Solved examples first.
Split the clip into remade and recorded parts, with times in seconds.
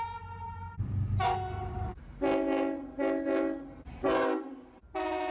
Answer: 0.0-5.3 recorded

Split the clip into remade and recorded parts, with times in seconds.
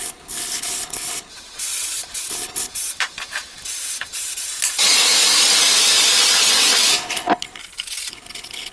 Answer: 0.0-1.3 remade; 1.3-2.3 recorded; 2.3-2.7 remade; 2.7-6.9 recorded; 6.9-7.6 remade; 7.6-8.1 recorded; 8.1-8.7 remade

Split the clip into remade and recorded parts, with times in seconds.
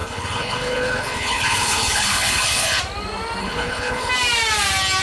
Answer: 0.0-2.8 remade; 2.8-3.4 recorded; 3.4-4.1 remade; 4.1-5.0 recorded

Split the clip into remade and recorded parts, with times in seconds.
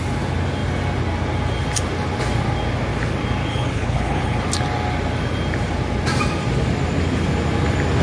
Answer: 0.0-3.5 recorded; 3.5-4.4 remade; 4.4-8.0 recorded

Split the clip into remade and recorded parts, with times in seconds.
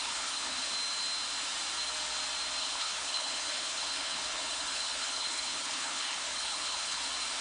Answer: 0.0-0.7 remade; 0.7-2.6 recorded; 2.6-7.0 remade; 7.0-7.4 recorded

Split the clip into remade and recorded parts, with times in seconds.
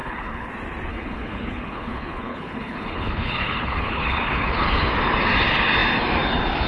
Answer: 0.0-0.5 remade; 0.5-0.9 recorded; 0.9-4.9 remade; 4.9-6.7 recorded